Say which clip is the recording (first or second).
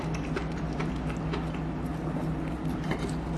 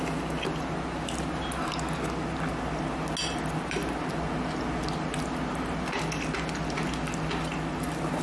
second